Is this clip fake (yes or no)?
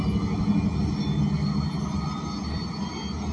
no